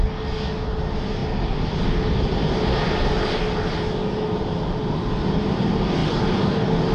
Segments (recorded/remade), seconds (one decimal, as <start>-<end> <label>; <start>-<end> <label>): 0.0-6.0 recorded; 6.0-6.9 remade

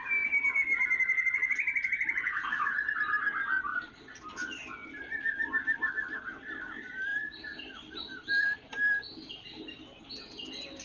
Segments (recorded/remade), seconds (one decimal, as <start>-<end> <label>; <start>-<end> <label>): 0.0-3.7 recorded; 3.7-4.3 remade; 4.3-10.8 recorded